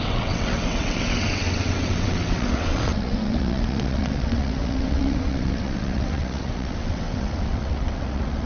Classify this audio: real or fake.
fake